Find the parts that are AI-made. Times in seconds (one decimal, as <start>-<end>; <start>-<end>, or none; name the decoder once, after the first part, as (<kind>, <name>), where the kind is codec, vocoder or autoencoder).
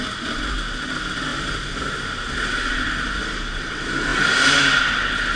none